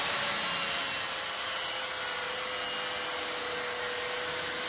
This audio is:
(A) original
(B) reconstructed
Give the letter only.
A